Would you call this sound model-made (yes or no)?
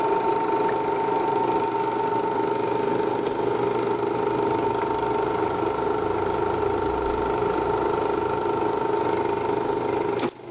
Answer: no